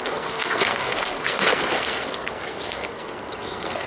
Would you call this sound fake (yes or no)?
yes